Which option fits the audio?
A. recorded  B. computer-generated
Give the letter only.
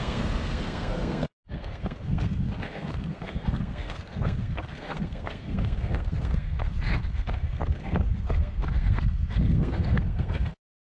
B